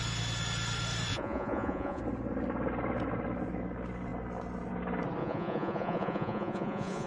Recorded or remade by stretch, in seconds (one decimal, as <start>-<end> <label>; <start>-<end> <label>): 0.0-1.1 recorded; 1.1-2.0 remade; 2.0-5.2 recorded; 5.2-7.1 remade